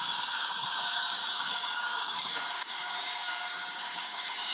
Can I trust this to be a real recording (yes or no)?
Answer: no